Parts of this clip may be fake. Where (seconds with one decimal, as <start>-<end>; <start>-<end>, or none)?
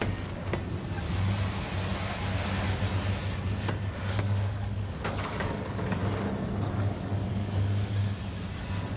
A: 0.0-0.4; 4.0-6.0; 6.7-8.0